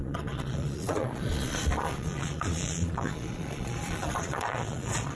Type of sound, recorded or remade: remade